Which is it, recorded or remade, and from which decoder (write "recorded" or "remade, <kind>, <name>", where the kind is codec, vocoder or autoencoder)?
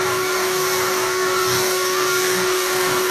remade, codec, DAC